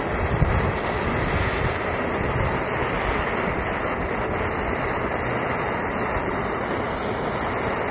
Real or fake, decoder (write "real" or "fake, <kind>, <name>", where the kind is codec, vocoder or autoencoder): real